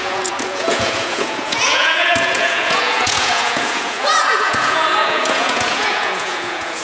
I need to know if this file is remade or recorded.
remade